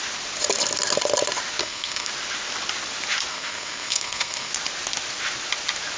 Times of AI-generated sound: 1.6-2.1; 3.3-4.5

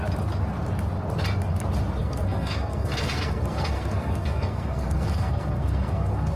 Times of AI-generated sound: 2.0-6.4

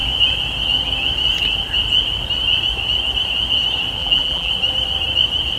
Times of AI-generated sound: 4.0-4.5

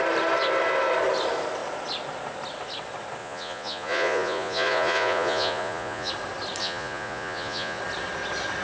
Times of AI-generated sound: 3.2-6.1; 6.6-7.8

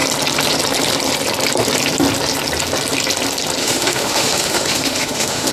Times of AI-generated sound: 3.6-5.5

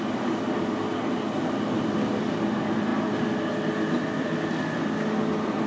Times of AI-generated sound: none